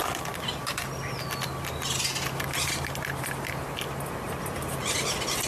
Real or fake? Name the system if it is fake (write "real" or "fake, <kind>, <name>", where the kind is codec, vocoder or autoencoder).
real